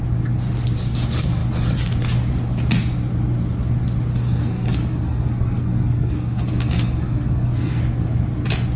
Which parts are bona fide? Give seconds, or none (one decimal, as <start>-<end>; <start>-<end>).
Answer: 0.0-4.1; 7.8-8.8